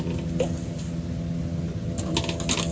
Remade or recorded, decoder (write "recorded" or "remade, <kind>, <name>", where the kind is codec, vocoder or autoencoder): recorded